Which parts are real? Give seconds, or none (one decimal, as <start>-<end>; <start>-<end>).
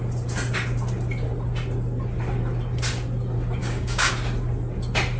0.0-3.6; 4.1-5.2